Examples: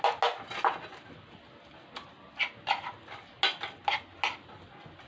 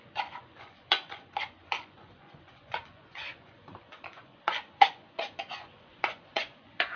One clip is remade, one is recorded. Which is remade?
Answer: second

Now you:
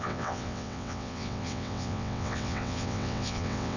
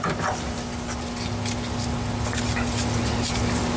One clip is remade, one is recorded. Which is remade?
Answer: first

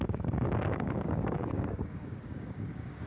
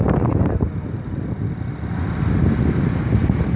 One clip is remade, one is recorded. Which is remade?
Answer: first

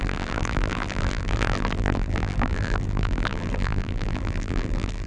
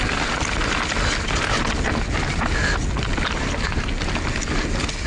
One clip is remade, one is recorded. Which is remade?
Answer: first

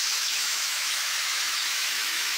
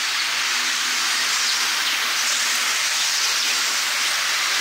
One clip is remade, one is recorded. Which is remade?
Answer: first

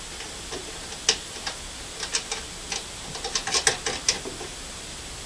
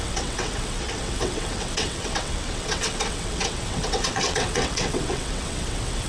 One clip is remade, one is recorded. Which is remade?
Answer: second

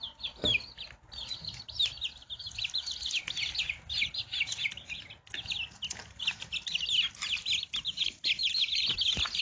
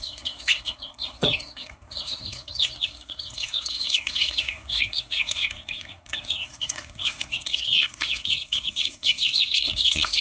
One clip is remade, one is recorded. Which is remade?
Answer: second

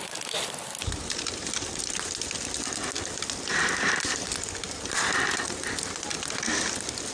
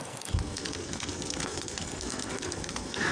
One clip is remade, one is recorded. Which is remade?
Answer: second